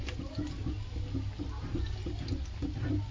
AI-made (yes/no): no